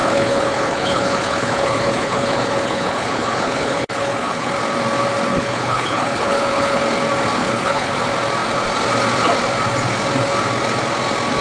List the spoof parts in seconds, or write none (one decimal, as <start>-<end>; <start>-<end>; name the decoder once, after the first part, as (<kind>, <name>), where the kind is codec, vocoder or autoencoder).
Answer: 0.0-4.5 (codec, HILCodec); 5.3-6.8; 7.4-7.9